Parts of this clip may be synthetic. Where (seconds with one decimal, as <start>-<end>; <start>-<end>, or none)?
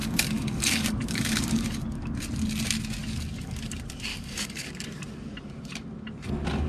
0.0-2.1; 3.0-3.6; 4.1-4.7